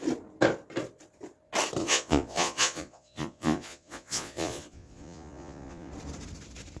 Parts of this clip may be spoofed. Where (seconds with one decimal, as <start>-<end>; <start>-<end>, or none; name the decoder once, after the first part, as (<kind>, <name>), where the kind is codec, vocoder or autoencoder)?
1.8-5.9 (vocoder, Vocos)